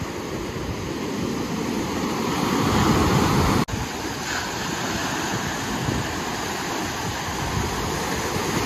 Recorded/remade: recorded